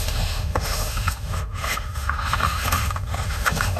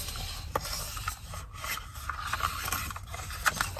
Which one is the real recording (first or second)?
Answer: second